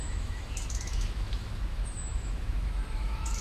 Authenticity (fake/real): fake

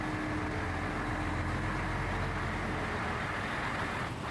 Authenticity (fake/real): real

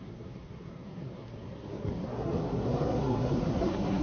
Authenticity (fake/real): fake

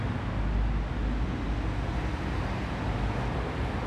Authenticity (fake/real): real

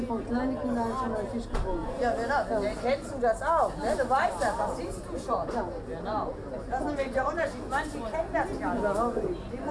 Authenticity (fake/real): real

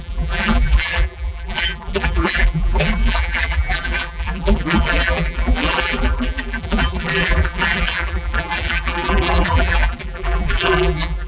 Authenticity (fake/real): fake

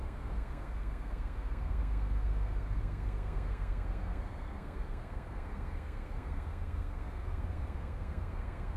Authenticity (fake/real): fake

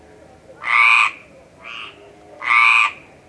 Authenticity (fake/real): real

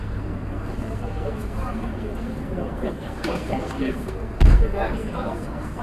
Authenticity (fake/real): fake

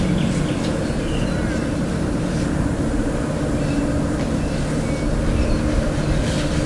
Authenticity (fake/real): real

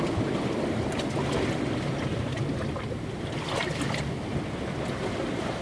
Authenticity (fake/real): real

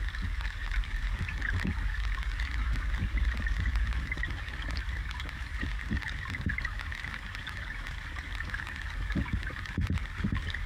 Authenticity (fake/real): fake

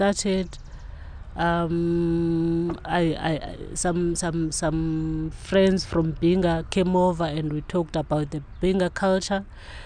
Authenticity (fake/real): real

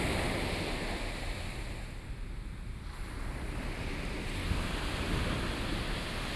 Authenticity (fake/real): real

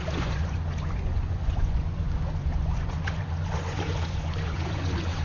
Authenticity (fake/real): fake